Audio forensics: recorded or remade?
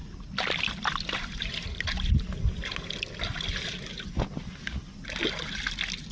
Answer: recorded